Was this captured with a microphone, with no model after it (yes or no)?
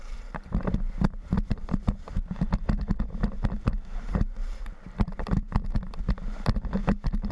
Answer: no